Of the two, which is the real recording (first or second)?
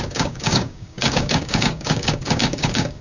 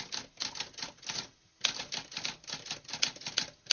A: second